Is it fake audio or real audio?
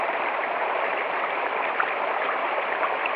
fake